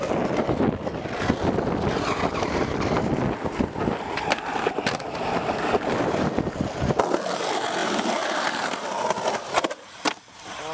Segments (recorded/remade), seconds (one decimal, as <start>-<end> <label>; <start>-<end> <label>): 0.0-10.7 recorded